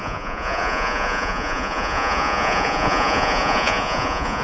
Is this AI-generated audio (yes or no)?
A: yes